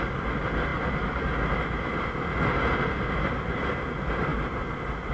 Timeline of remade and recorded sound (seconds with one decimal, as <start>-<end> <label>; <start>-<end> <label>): 0.0-5.1 recorded